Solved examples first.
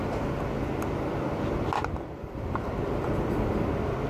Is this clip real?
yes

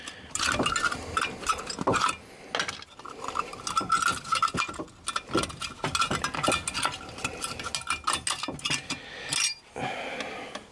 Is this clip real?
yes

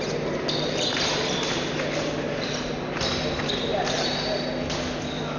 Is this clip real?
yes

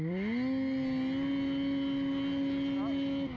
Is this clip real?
yes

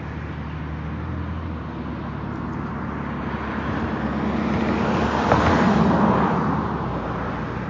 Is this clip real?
yes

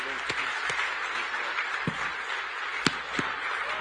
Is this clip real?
yes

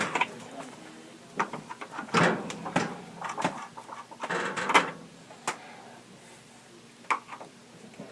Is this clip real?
yes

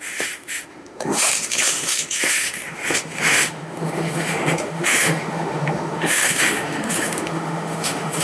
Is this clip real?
no